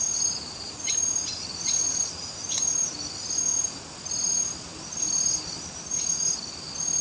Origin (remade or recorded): recorded